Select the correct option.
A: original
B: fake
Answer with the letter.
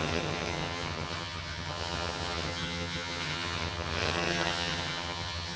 B